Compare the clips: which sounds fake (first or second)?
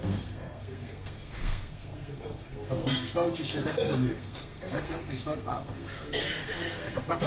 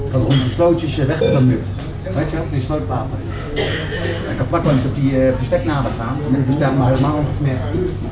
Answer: first